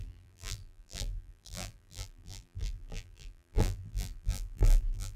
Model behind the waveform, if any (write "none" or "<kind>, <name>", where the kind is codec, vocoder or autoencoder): vocoder, BigVGAN v2